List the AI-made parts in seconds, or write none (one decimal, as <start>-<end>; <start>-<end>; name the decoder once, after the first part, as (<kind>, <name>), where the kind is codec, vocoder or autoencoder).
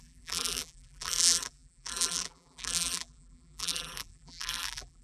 0.0-5.0 (vocoder, BigVGAN v2)